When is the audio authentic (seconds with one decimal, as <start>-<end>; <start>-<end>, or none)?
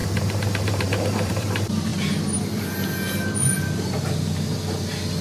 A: 1.9-5.2